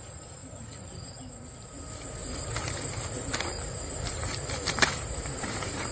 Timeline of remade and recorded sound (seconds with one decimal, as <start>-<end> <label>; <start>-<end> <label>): 0.0-0.4 recorded; 0.4-1.1 remade; 1.1-2.2 recorded; 2.2-5.9 remade